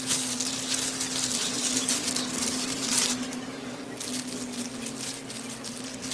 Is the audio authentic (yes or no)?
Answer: yes